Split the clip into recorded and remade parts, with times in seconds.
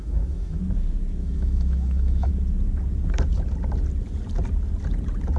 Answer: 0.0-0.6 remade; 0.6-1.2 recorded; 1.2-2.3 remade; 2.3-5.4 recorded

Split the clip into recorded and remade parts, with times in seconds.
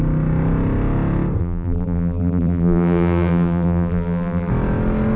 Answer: 0.0-1.4 recorded; 1.4-4.5 remade; 4.5-5.2 recorded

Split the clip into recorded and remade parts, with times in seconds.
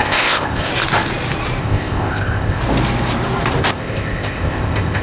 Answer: 0.0-0.7 remade; 0.7-1.6 recorded; 1.6-2.6 remade; 2.6-3.6 recorded; 3.6-5.0 remade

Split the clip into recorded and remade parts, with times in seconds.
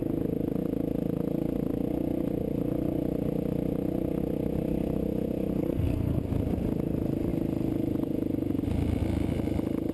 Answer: 0.0-5.6 recorded; 5.6-6.2 remade; 6.2-9.9 recorded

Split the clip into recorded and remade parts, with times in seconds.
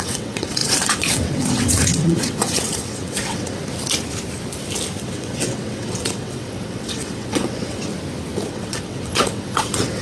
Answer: 0.0-3.6 remade; 3.6-5.0 recorded; 5.0-7.9 remade; 7.9-8.5 recorded; 8.5-10.0 remade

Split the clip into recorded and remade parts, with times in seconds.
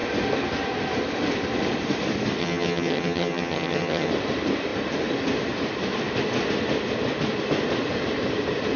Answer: 0.0-2.4 recorded; 2.4-4.1 remade; 4.1-8.8 recorded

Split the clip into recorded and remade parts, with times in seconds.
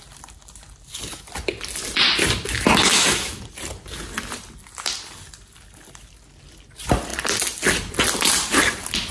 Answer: 0.0-2.9 recorded; 2.9-3.4 remade; 3.4-9.1 recorded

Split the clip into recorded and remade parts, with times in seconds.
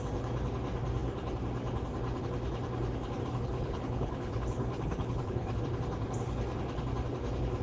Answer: 0.0-3.2 recorded; 3.2-5.6 remade; 5.6-7.6 recorded